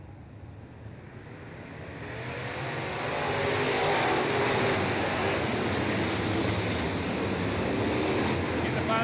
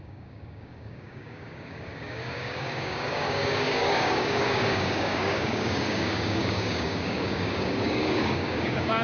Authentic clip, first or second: first